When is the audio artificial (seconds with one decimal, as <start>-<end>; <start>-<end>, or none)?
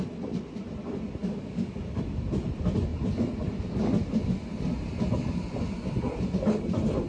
1.2-2.0